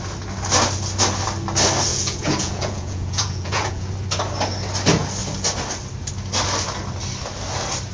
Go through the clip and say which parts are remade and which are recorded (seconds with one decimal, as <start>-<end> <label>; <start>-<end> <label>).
0.0-1.9 recorded; 1.9-3.9 remade; 3.9-7.9 recorded